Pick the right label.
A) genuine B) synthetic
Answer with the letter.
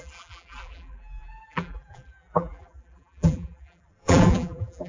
B